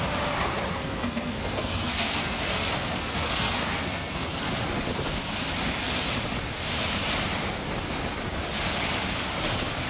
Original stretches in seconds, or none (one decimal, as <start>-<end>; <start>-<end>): 0.0-0.7; 4.5-9.9